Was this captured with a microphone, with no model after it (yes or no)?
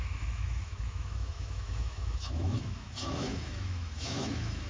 no